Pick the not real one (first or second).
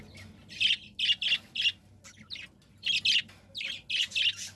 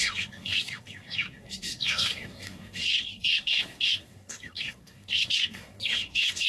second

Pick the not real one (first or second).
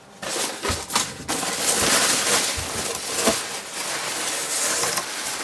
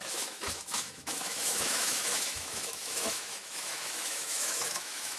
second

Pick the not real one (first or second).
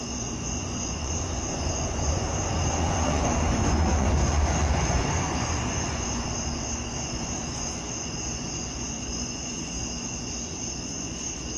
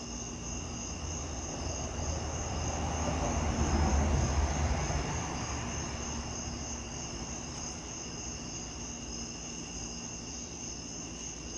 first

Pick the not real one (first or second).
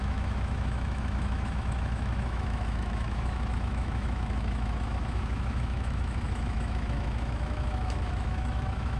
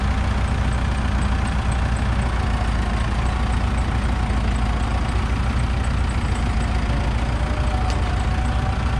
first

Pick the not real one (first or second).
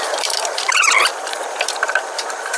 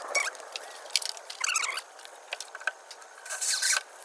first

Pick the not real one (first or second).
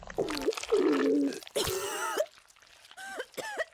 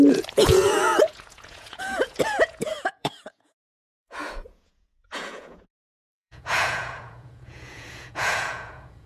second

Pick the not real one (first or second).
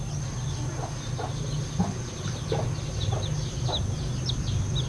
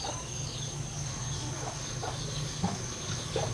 second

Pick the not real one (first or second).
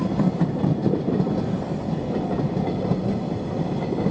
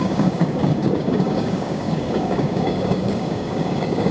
second